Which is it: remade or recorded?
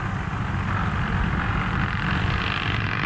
recorded